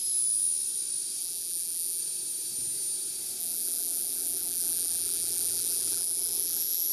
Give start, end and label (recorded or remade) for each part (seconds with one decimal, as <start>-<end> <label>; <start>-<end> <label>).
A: 0.0-1.2 recorded; 1.2-2.0 remade; 2.0-3.4 recorded; 3.4-6.9 remade